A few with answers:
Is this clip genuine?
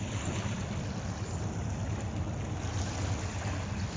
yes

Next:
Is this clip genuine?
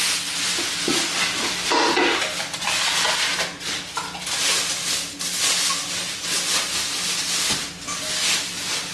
yes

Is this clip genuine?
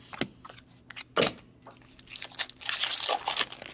yes